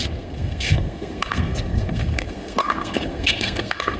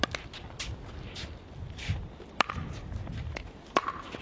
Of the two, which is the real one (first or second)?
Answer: second